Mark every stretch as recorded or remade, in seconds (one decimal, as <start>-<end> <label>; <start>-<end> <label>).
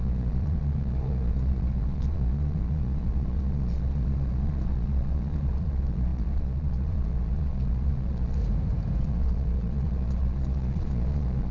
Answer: 0.0-8.4 remade; 8.4-9.0 recorded; 9.0-11.5 remade